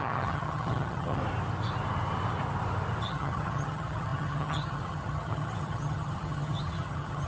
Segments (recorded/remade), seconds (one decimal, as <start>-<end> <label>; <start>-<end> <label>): 0.0-1.2 remade; 1.2-3.0 recorded; 3.0-7.3 remade